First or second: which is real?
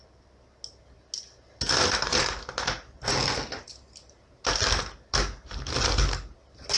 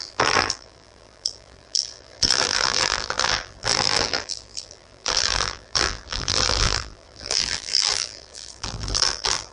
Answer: first